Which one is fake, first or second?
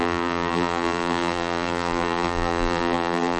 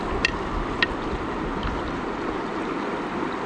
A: first